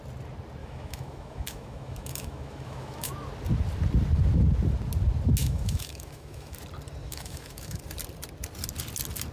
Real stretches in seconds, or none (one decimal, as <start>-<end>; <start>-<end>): 0.0-0.6; 3.1-5.4; 6.6-7.0; 7.8-9.3